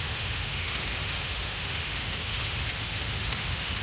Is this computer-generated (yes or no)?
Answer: yes